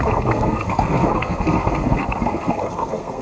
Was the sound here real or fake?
fake